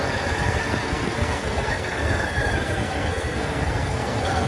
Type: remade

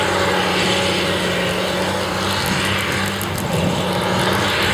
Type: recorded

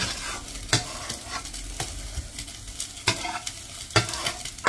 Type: recorded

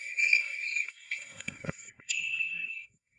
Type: remade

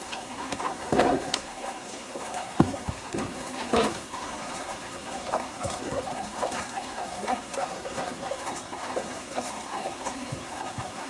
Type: remade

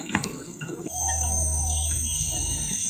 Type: remade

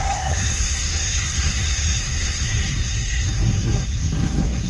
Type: remade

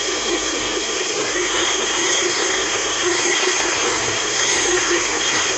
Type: remade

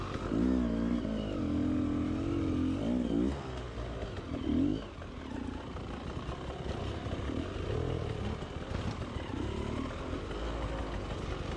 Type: recorded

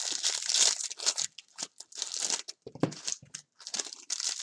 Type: recorded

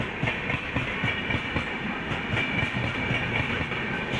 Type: recorded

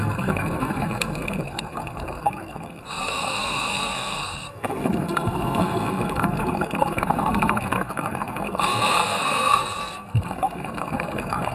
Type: remade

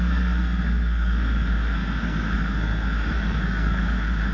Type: remade